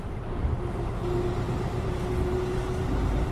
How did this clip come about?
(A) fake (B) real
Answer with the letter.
B